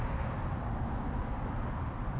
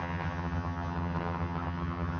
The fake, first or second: second